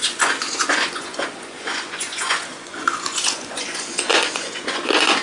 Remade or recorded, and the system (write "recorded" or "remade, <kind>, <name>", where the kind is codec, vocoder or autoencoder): remade, vocoder, Vocos